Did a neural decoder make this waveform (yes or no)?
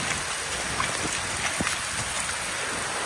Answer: no